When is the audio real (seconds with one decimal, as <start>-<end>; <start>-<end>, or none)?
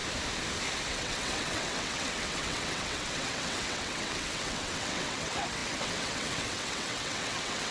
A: 0.0-0.9